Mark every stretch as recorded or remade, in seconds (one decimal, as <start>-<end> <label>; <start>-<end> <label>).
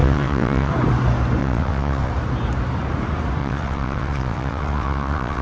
0.0-0.7 remade; 0.7-1.4 recorded; 1.4-2.1 remade; 2.1-3.4 recorded; 3.4-5.4 remade